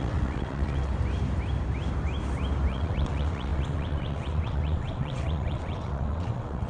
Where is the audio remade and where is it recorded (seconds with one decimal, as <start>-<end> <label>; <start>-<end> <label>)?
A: 0.0-0.9 remade; 0.9-2.7 recorded; 2.7-6.7 remade